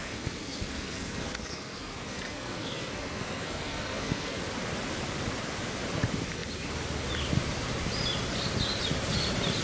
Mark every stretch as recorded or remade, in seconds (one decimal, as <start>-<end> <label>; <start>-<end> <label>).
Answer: 0.0-4.4 remade; 4.4-9.6 recorded